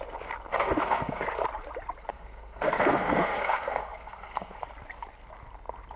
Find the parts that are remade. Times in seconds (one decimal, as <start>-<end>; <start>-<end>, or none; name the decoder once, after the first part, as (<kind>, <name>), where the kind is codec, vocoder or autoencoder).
0.5-1.2 (codec, SNAC); 2.1-4.6